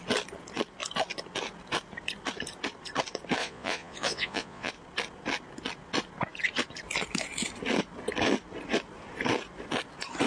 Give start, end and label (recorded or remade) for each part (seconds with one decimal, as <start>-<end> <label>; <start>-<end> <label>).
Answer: 0.0-3.4 recorded; 3.4-4.7 remade; 4.7-10.3 recorded